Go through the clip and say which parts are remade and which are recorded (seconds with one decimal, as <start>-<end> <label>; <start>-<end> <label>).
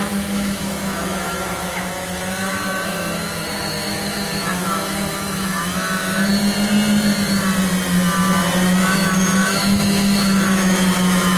0.0-6.3 remade; 6.3-8.8 recorded; 8.8-11.4 remade